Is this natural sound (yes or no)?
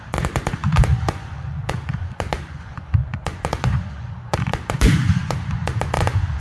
no